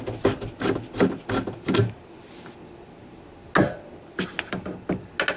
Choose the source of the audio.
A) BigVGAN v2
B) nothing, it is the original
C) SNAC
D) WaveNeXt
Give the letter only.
B